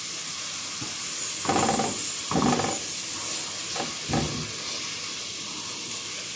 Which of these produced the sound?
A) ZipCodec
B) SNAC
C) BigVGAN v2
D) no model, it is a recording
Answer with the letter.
D